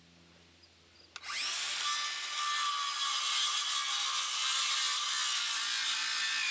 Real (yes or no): yes